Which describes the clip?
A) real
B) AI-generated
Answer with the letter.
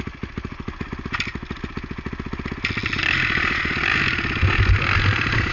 A